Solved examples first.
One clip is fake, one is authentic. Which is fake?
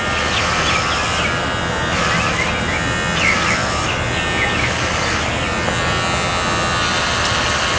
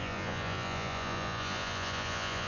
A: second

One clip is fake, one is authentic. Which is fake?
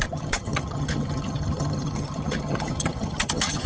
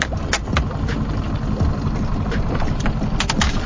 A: first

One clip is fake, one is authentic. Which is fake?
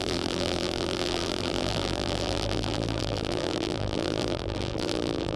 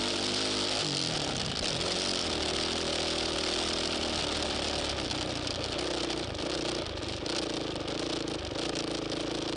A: first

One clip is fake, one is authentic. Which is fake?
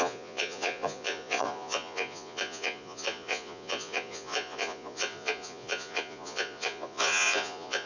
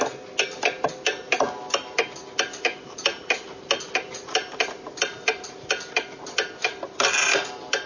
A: first